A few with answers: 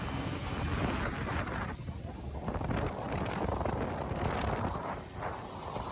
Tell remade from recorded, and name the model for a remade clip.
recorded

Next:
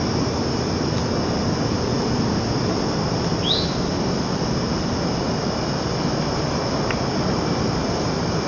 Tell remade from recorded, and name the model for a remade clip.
recorded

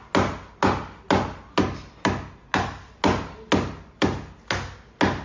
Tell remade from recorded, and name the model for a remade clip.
recorded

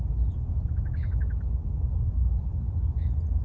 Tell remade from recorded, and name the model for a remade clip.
recorded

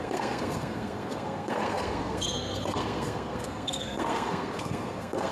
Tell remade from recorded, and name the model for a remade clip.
remade, codec, SNAC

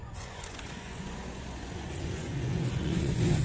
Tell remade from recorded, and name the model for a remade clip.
remade, vocoder, Vocos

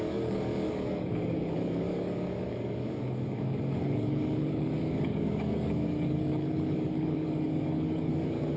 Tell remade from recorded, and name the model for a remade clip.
remade, codec, DAC